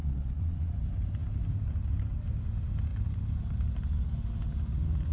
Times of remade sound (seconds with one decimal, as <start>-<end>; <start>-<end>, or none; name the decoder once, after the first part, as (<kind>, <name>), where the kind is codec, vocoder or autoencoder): 0.0-0.7 (vocoder, Vocos)